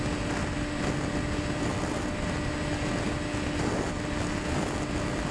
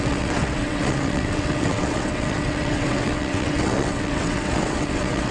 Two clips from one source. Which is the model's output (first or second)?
second